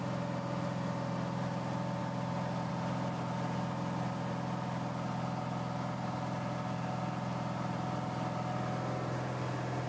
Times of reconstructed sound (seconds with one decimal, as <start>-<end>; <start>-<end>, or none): none